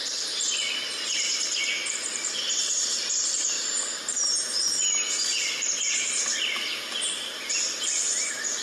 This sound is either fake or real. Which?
fake